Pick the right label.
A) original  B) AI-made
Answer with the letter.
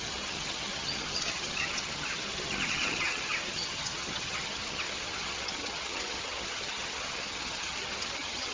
B